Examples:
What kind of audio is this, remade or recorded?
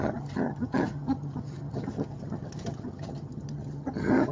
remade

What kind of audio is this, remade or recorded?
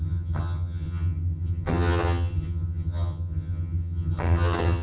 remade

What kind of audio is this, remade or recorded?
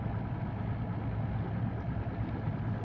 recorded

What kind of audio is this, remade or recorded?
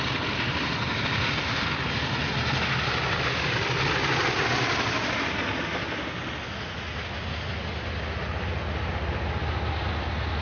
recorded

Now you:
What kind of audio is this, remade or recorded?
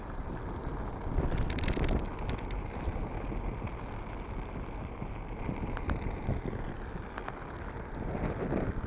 recorded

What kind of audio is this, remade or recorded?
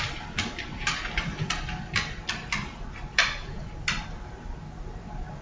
recorded